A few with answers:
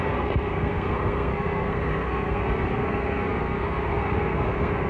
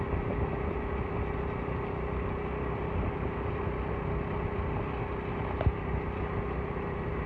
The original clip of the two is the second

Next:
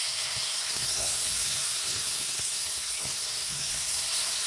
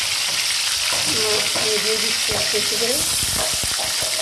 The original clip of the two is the second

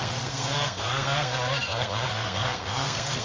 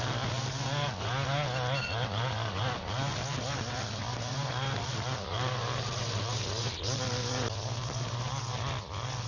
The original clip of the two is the second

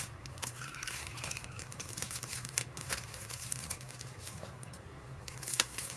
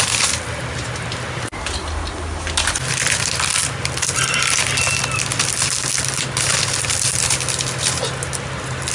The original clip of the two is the second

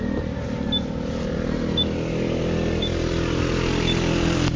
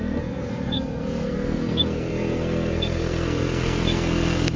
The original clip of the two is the first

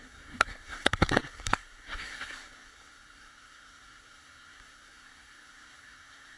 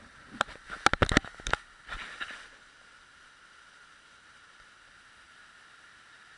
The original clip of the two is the second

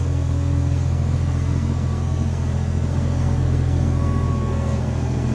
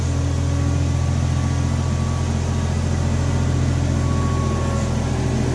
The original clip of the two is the second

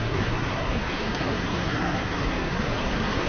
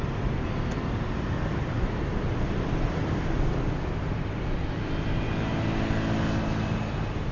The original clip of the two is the second